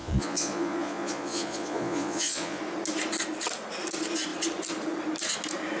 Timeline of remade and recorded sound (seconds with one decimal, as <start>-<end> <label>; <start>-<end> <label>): 0.0-2.6 remade; 2.6-5.8 recorded